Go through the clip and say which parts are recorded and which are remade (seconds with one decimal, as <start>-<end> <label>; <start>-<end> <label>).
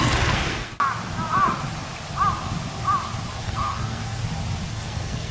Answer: 0.0-0.7 remade; 0.7-3.4 recorded; 3.4-4.2 remade; 4.2-4.7 recorded; 4.7-5.3 remade